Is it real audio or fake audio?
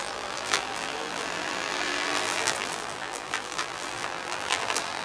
fake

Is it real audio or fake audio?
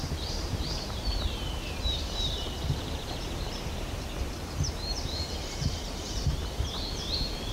fake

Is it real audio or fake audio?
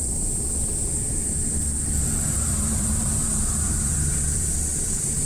fake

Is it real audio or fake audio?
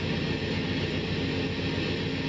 real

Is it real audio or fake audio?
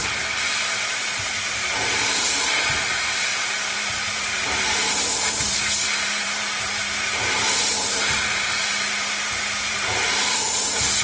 fake